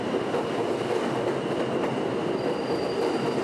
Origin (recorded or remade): recorded